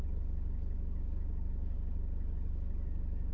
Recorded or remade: recorded